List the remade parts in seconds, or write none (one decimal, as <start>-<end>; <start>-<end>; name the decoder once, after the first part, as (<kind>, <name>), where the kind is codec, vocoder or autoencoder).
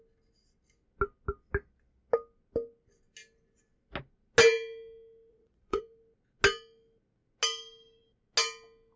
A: 5.3-5.8 (vocoder, Vocos)